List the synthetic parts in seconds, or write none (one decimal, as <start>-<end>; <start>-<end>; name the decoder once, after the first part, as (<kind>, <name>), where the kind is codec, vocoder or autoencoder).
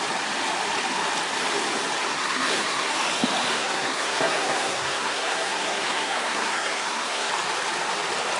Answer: 2.1-2.9 (codec, SNAC); 3.5-7.3